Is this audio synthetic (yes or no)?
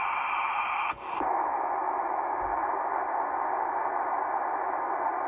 no